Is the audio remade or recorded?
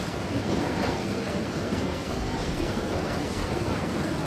remade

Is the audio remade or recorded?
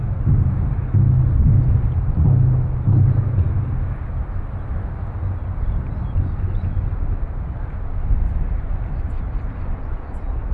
recorded